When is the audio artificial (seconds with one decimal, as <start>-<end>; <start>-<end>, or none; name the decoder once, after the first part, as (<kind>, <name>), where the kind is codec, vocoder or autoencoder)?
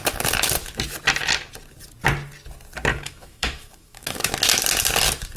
2.9-4.3 (autoencoder, DAC-VAE)